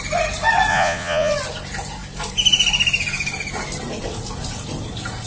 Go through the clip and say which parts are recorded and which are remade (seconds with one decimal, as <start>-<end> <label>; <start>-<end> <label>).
0.0-0.7 recorded; 0.7-1.3 remade; 1.3-5.3 recorded